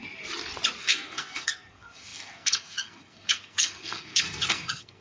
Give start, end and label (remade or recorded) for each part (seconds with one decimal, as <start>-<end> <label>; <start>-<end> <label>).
0.0-0.8 recorded; 0.8-5.0 remade